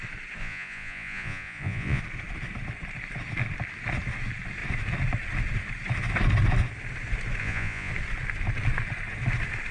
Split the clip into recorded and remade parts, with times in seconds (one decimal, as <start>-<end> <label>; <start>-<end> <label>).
0.0-0.4 recorded; 0.4-2.0 remade; 2.0-7.4 recorded; 7.4-7.9 remade; 7.9-9.7 recorded